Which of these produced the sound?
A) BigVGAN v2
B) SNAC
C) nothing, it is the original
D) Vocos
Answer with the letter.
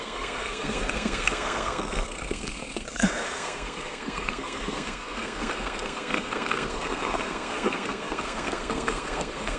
B